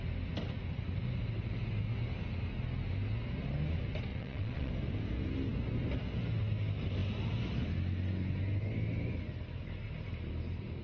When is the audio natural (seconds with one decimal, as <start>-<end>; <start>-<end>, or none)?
0.0-4.1; 4.7-10.8